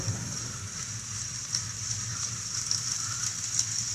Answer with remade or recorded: recorded